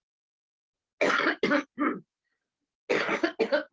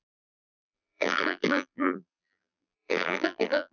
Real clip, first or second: first